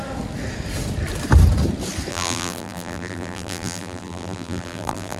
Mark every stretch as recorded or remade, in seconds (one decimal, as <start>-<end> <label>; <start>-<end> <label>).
0.0-2.1 recorded; 2.1-5.2 remade